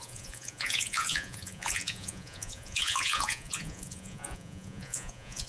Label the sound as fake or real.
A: fake